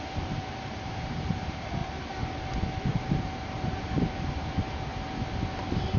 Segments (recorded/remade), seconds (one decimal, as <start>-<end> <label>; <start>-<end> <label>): 0.0-1.8 remade; 1.8-2.9 recorded; 2.9-4.9 remade; 4.9-6.0 recorded